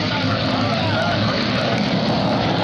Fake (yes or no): yes